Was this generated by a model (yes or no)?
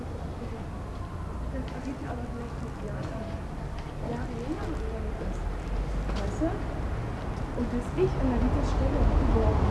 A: no